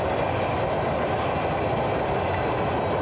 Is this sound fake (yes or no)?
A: no